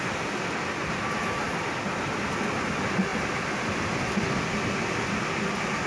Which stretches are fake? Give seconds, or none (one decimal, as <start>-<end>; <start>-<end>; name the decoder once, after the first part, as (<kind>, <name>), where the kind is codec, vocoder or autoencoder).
none